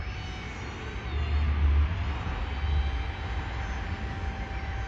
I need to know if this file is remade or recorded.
recorded